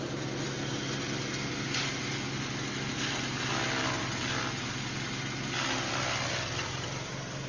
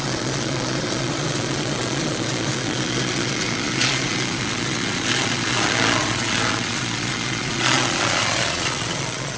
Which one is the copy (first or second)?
second